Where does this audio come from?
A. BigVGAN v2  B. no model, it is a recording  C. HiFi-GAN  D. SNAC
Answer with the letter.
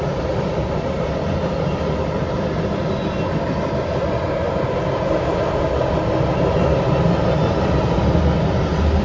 B